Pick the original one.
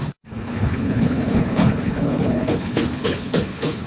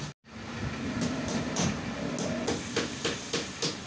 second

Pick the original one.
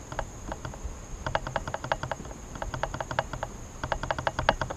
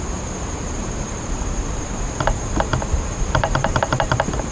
first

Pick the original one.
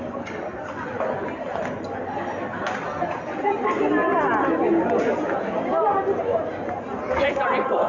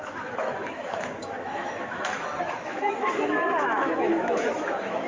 first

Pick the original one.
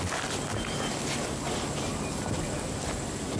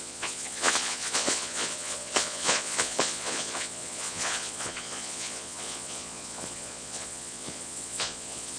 first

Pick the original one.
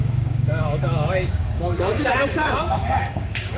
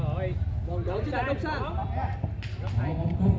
second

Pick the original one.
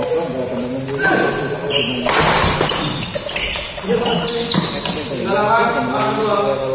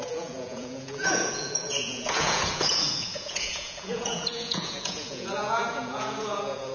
first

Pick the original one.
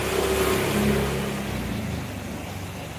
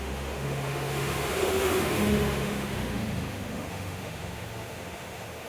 first